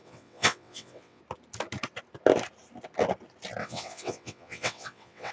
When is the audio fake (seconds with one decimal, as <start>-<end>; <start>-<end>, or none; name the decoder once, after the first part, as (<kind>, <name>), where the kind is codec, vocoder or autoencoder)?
0.0-1.2 (vocoder, WaveNeXt); 3.6-5.3